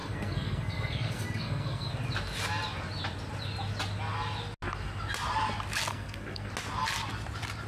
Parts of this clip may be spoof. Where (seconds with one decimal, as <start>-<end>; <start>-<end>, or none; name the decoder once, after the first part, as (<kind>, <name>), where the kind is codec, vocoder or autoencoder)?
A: 0.0-1.9 (codec, SNAC); 5.9-6.5